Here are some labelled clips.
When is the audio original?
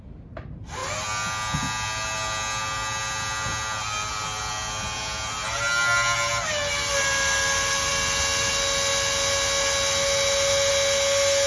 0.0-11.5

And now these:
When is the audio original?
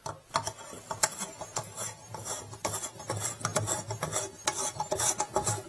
0.0-5.7